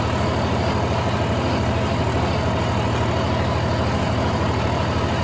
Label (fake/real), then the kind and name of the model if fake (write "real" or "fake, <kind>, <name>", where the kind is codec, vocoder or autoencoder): real